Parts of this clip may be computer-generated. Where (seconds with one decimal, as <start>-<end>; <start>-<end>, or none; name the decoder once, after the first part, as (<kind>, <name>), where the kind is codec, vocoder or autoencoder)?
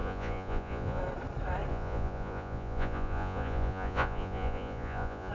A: 0.0-1.0 (vocoder, Vocos); 1.7-5.3